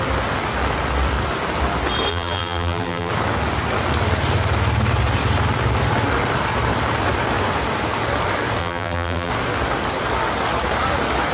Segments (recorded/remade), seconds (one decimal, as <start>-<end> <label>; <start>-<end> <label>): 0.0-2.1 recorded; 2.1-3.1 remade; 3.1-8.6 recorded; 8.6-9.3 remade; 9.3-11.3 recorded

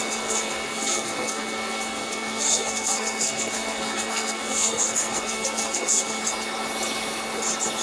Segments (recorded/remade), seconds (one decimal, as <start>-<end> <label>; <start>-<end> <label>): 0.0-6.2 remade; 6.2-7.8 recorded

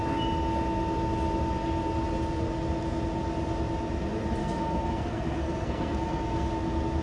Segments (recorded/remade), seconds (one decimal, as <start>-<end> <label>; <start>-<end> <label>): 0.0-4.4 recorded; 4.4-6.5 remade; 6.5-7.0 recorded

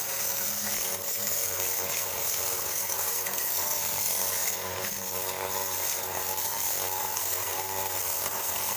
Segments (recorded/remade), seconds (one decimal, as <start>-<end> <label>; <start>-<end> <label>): 0.0-8.8 remade